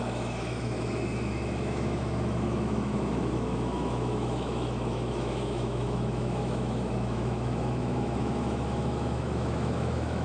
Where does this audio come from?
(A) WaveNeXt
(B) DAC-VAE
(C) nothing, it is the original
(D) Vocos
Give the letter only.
B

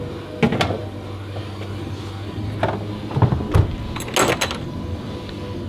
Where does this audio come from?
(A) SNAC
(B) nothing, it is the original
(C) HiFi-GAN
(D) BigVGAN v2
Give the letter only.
B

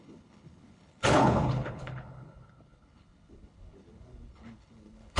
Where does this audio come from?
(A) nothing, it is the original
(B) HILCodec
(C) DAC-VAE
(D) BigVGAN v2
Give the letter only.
B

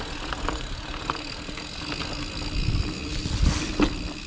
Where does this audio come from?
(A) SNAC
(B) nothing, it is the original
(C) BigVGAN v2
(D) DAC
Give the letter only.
B